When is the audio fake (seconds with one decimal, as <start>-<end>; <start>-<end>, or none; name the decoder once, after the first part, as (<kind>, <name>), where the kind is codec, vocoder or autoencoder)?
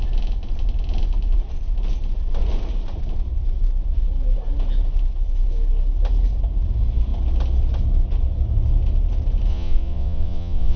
9.5-10.8 (vocoder, Vocos)